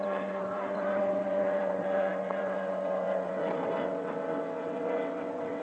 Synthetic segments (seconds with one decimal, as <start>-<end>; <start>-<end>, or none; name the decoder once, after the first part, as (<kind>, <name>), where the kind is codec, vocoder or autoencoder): 0.0-5.6 (vocoder, WaveNeXt)